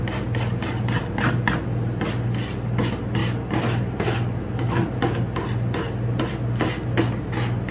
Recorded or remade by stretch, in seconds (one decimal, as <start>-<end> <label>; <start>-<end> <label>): 0.0-1.0 recorded; 1.0-1.5 remade; 1.5-7.7 recorded